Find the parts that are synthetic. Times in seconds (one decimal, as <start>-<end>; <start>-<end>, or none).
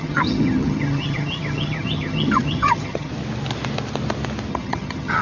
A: 0.0-3.1; 4.5-5.2